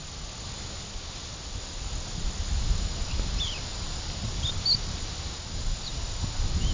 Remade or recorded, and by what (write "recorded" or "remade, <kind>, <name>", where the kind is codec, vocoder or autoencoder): recorded